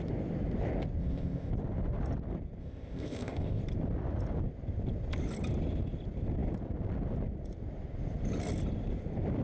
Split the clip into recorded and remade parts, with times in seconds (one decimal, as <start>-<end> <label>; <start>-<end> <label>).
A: 0.0-1.0 recorded; 1.0-1.5 remade; 1.5-2.6 recorded; 2.6-3.6 remade; 3.6-9.4 recorded